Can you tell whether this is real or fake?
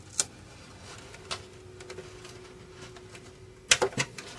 real